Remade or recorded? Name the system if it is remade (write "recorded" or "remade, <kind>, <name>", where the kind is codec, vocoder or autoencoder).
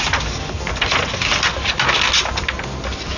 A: recorded